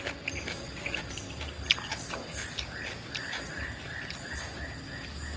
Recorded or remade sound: recorded